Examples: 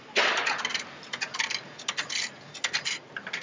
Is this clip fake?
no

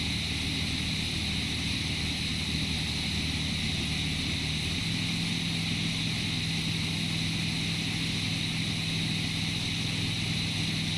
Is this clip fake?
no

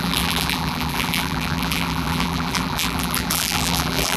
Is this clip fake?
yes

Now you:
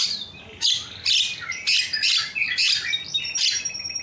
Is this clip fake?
no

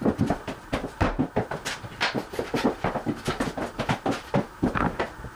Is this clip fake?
no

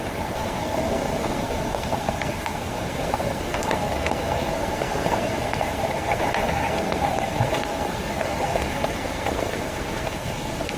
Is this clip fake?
yes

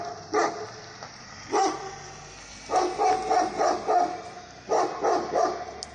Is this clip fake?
no